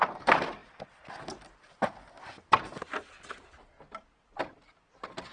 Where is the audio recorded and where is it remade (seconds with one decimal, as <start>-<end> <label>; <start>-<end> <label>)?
0.0-5.3 recorded